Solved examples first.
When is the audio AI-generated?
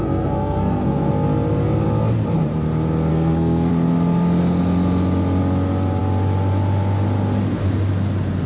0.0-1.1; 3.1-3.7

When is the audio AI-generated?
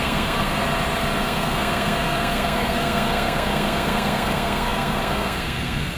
0.0-0.6; 1.2-6.0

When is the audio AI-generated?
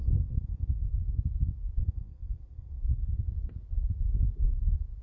0.0-0.9; 1.8-3.3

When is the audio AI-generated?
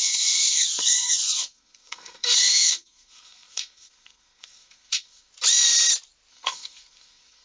0.0-5.3; 6.3-7.4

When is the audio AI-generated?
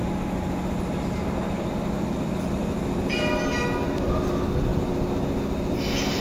none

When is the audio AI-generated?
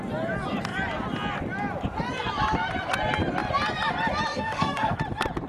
4.3-5.0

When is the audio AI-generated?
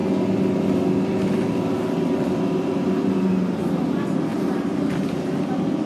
none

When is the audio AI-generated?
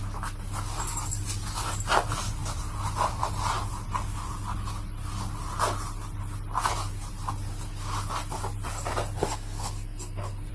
9.2-10.5